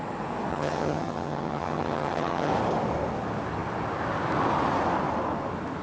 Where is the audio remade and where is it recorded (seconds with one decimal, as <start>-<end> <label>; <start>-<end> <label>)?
0.0-0.5 recorded; 0.5-2.5 remade; 2.5-5.8 recorded